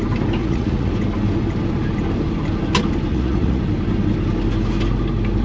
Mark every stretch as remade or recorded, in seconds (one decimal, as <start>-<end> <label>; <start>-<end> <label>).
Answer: 0.0-0.4 recorded; 0.4-0.9 remade; 0.9-3.1 recorded; 3.1-3.6 remade; 3.6-5.4 recorded